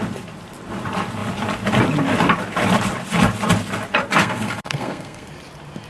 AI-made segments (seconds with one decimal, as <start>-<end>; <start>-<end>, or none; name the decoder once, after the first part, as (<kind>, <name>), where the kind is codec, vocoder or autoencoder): 4.2-5.3 (codec, SNAC)